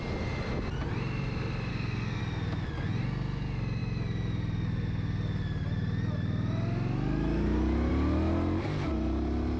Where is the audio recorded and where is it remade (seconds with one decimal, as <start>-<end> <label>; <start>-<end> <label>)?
0.0-1.7 recorded; 1.7-2.2 remade; 2.2-9.6 recorded